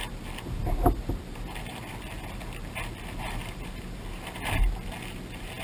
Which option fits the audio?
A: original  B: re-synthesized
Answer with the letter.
A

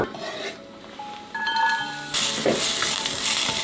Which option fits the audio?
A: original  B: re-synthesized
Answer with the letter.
A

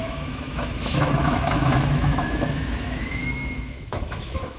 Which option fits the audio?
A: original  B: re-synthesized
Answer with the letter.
B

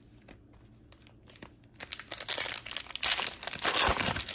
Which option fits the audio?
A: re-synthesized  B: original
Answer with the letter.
B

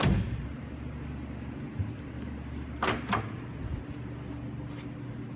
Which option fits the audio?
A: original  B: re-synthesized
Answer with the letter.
A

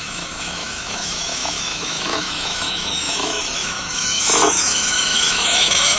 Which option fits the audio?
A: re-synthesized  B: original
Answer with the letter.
A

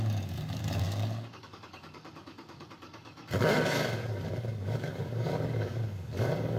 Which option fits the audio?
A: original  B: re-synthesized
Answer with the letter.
B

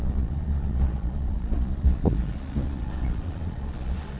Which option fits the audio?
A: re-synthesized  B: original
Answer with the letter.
A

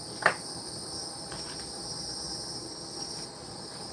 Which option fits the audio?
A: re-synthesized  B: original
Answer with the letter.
B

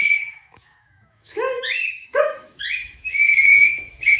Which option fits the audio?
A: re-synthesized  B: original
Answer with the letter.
A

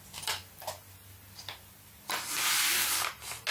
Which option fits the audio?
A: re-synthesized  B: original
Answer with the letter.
B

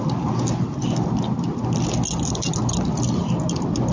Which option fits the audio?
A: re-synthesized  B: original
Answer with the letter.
B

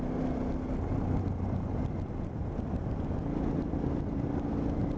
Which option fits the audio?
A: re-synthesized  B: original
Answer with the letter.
B